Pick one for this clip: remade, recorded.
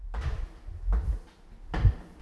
recorded